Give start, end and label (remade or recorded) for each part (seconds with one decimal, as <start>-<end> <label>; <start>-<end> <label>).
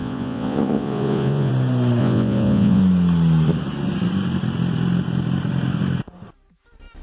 0.0-1.5 remade; 1.5-2.0 recorded; 2.0-2.8 remade; 2.8-7.0 recorded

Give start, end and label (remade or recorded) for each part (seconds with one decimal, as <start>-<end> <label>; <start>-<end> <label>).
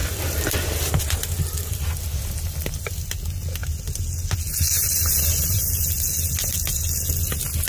0.0-1.0 remade; 1.0-7.7 recorded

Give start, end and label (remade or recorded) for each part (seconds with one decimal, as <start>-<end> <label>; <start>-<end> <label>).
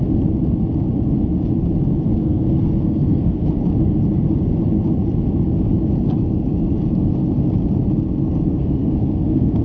0.0-2.2 recorded; 2.2-3.5 remade; 3.5-8.5 recorded; 8.5-9.6 remade